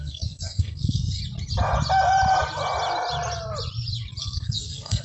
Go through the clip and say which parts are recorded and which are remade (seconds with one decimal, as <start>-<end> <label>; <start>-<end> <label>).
0.0-1.2 remade; 1.2-4.2 recorded; 4.2-5.0 remade